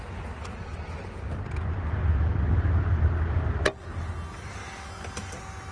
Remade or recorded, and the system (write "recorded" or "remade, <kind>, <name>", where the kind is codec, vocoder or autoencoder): recorded